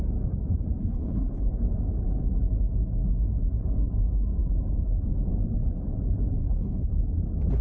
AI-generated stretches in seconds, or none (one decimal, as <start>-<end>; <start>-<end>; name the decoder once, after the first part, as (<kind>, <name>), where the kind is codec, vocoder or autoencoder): 0.8-1.4 (codec, HILCodec); 6.4-6.9